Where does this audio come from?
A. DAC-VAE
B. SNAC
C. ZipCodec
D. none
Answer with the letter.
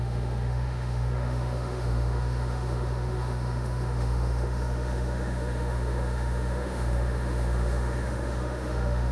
A